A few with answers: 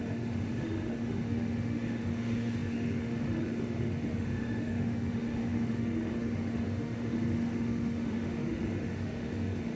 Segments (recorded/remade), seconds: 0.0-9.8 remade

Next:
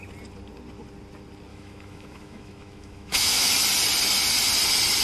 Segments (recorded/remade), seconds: 0.0-1.5 recorded; 1.5-3.5 remade; 3.5-5.0 recorded

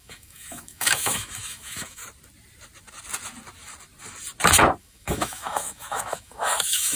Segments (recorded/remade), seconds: 0.0-2.0 remade; 2.0-4.8 recorded; 4.8-7.0 remade

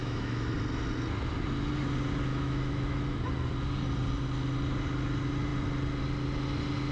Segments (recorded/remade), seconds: 0.0-0.5 remade; 0.5-2.3 recorded; 2.3-3.2 remade; 3.2-6.9 recorded

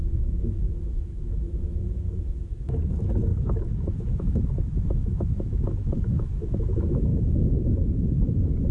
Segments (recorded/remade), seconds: 0.0-8.7 remade

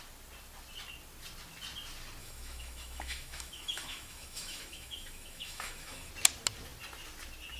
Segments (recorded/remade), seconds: 0.0-2.2 recorded; 2.2-6.1 remade; 6.1-7.6 recorded

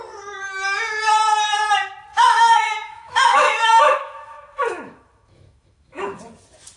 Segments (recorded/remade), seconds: 0.0-2.1 recorded; 2.1-6.2 remade; 6.2-6.8 recorded